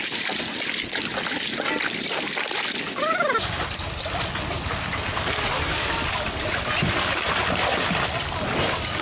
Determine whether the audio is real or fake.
real